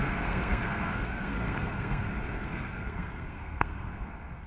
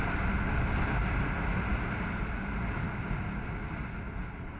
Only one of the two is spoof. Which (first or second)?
first